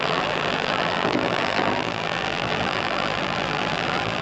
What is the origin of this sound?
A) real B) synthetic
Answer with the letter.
B